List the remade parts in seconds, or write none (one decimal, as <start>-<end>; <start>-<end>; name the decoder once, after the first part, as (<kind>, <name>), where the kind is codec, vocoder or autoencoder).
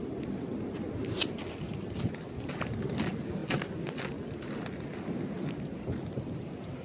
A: none